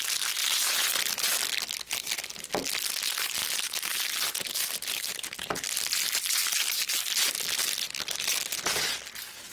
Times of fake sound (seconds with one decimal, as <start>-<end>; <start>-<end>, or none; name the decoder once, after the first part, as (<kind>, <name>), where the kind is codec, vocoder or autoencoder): 0.4-1.5 (vocoder, BigVGAN v2); 3.4-5.5